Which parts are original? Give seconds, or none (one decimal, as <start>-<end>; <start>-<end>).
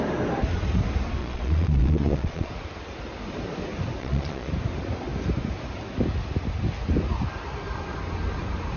0.0-1.2; 2.5-4.0; 4.5-8.8